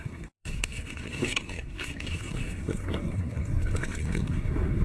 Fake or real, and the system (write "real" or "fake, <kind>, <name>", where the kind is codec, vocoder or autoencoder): fake, codec, SNAC